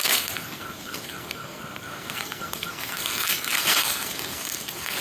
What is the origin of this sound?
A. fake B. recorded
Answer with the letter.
A